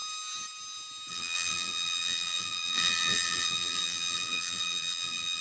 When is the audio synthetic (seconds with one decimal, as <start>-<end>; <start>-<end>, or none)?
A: 1.1-5.4